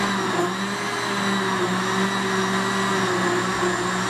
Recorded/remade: recorded